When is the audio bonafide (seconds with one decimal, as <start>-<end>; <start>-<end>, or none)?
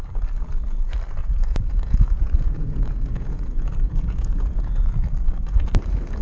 0.0-1.2; 4.9-6.2